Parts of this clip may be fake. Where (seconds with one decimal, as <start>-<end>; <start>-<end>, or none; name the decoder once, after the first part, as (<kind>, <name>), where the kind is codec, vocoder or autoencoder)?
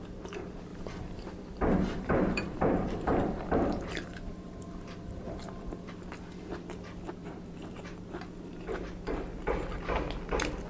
0.7-5.9 (vocoder, BigVGAN v2); 7.2-7.8